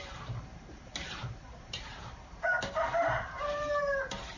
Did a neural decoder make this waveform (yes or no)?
yes